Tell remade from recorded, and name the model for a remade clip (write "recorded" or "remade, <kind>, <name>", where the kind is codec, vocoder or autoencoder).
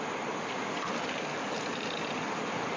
remade, vocoder, BigVGAN v2